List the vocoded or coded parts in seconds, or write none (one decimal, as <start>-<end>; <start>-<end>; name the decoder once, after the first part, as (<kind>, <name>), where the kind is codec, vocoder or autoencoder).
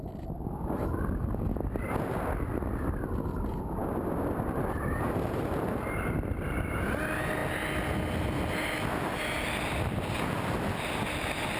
none